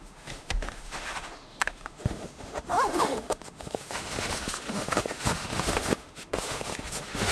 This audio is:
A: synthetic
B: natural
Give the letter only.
A